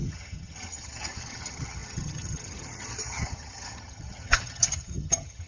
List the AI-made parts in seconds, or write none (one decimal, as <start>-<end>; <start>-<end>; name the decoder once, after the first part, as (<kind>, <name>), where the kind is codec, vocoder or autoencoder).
0.0-5.5 (vocoder, HiFi-GAN)